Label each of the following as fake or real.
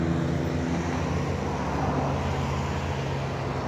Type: real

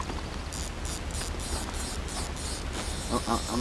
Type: real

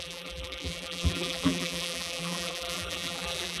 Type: fake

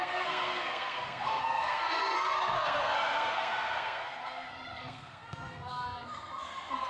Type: fake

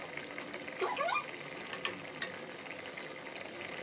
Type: real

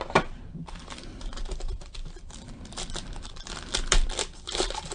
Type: fake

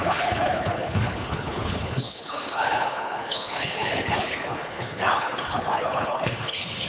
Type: fake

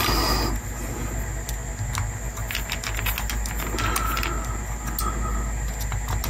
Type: real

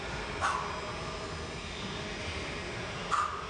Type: real